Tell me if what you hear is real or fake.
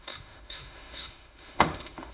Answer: fake